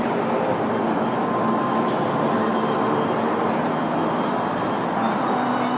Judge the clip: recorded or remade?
recorded